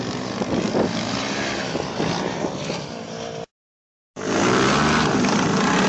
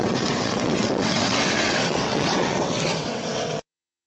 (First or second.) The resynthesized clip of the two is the second